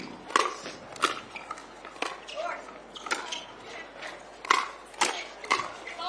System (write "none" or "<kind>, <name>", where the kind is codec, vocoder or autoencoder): none